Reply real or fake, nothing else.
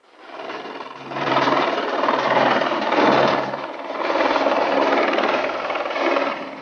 fake